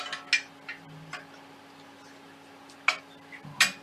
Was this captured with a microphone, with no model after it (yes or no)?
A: yes